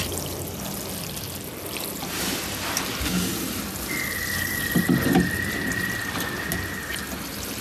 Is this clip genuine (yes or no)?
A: yes